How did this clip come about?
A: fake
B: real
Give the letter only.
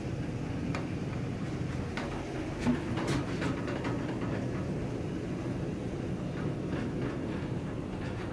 B